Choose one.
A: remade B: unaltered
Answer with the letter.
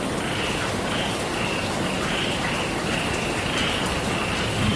B